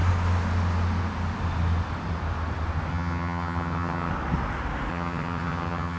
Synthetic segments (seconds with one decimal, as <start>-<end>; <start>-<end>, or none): 2.9-4.1; 4.9-6.0